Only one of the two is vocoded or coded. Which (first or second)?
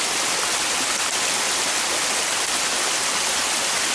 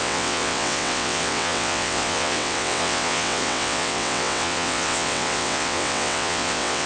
second